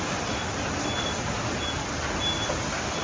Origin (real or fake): real